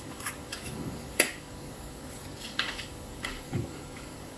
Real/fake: fake